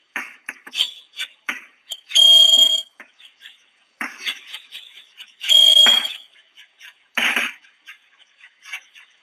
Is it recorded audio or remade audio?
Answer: remade